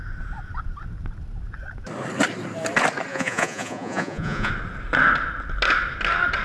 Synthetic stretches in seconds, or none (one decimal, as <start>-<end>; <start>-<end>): 3.1-4.5